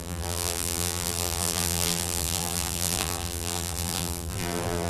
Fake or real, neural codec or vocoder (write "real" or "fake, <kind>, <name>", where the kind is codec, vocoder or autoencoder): fake, vocoder, BigVGAN v2